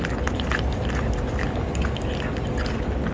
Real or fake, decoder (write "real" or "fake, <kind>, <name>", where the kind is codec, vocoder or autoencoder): real